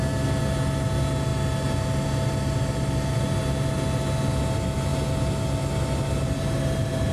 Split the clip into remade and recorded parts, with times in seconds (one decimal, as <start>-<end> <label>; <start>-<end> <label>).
0.0-7.1 recorded